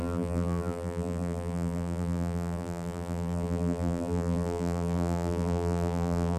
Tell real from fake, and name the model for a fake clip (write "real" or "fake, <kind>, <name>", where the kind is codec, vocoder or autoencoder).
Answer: fake, vocoder, BigVGAN v2